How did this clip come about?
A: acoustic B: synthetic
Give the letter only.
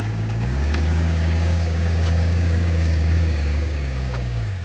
B